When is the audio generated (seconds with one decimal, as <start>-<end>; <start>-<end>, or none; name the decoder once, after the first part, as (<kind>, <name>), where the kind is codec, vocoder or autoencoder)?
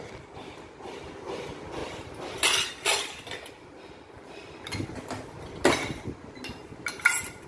none